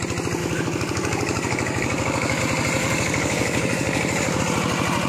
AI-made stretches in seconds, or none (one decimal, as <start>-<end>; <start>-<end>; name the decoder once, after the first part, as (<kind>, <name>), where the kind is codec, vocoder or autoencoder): 0.4-2.4 (codec, DAC); 2.8-4.4